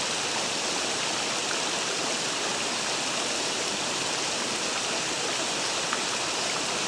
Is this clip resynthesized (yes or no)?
no